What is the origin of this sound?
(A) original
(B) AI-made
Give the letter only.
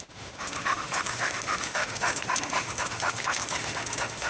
B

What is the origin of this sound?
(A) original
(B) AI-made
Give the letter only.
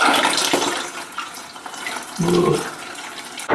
A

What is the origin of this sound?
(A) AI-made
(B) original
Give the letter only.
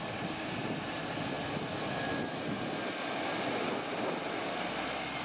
B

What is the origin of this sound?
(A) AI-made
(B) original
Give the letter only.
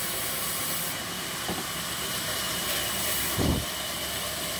A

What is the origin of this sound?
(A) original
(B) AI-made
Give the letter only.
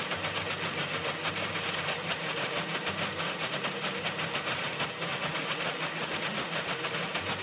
A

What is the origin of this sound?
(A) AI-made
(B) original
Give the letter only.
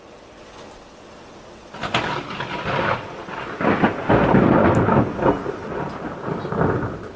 B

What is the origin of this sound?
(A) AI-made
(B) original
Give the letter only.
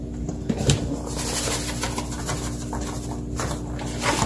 B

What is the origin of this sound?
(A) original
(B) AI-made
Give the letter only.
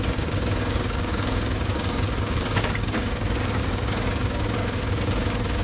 B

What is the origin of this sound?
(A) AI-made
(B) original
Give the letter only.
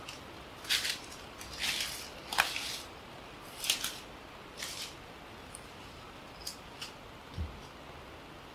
B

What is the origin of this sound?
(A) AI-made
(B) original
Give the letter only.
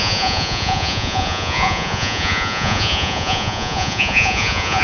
A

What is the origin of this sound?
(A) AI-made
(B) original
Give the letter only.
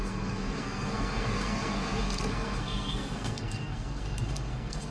A